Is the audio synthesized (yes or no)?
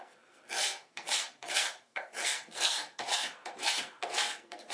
yes